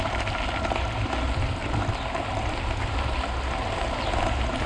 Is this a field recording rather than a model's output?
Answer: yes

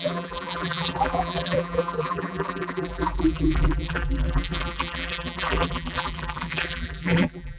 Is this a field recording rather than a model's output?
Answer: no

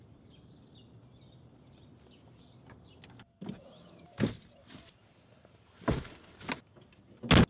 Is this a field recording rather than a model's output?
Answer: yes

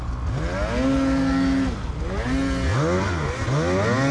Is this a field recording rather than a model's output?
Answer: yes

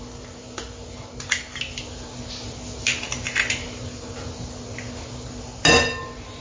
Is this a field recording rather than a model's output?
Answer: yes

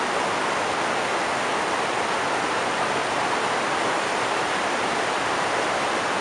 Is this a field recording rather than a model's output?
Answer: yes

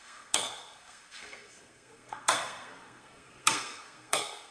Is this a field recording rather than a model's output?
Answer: no